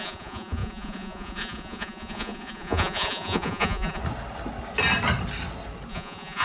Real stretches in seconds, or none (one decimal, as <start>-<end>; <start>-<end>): 4.0-5.9